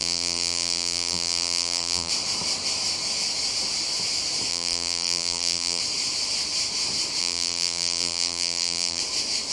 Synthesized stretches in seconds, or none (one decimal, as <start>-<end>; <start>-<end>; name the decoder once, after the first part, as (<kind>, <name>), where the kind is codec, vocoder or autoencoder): 0.0-2.1 (vocoder, BigVGAN v2); 4.5-5.8; 7.2-9.0